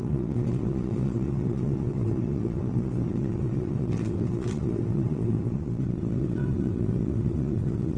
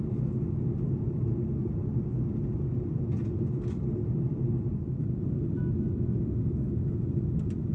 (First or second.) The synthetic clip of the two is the first